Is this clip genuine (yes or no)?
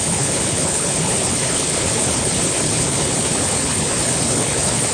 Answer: no